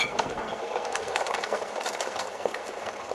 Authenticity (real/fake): fake